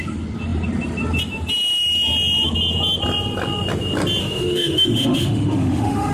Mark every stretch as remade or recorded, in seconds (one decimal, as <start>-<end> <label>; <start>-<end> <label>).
0.0-4.2 recorded; 4.2-6.1 remade